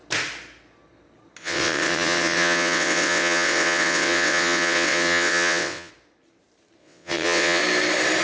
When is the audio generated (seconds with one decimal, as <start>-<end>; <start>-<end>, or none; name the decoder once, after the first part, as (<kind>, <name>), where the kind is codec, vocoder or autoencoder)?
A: 1.4-5.9 (vocoder, WaveNeXt); 6.8-7.6